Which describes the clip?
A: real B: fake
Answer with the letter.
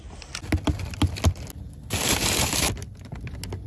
A